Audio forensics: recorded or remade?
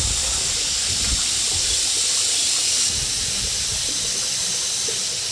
recorded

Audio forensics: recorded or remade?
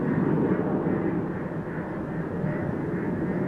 recorded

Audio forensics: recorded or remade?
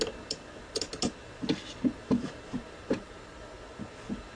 recorded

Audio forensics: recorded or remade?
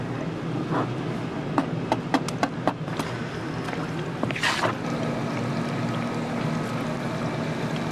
recorded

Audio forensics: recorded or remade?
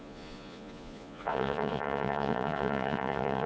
remade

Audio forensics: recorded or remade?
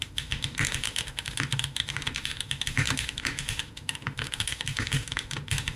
remade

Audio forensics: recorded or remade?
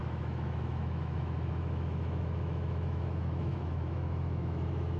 remade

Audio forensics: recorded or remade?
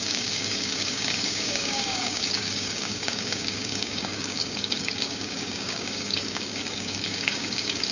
remade